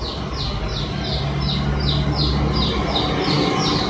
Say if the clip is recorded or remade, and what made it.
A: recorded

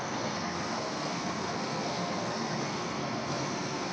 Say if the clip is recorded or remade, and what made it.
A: remade, codec, SNAC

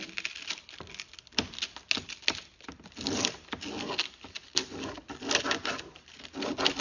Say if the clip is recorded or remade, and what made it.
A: recorded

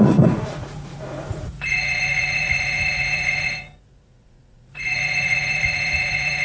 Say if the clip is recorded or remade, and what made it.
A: remade, vocoder, Vocos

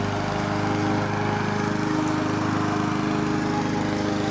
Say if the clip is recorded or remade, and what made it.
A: recorded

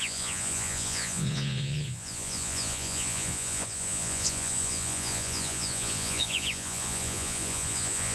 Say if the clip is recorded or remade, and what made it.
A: remade, vocoder, Vocos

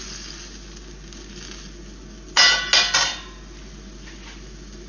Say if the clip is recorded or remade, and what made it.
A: recorded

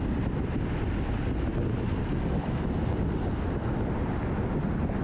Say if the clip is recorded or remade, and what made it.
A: recorded